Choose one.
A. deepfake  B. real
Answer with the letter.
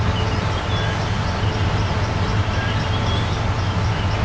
B